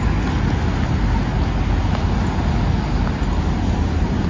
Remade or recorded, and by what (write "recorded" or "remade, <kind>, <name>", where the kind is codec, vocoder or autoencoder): recorded